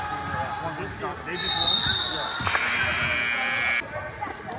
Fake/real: real